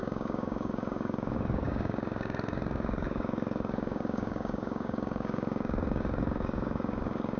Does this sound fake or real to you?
fake